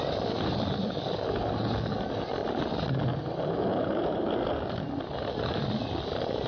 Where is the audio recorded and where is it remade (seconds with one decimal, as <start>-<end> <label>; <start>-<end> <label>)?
0.0-3.7 recorded; 3.7-4.3 remade; 4.3-6.5 recorded

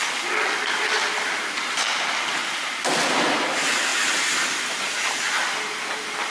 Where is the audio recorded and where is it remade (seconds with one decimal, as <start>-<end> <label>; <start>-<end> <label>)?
0.0-6.3 recorded

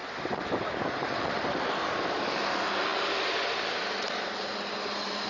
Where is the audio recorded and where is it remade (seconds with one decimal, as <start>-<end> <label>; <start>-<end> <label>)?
0.0-5.3 remade